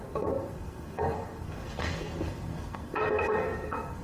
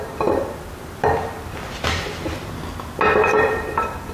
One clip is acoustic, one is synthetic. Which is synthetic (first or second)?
first